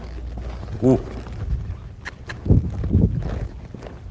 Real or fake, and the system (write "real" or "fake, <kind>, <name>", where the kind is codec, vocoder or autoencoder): real